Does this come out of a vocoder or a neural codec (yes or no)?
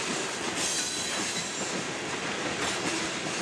no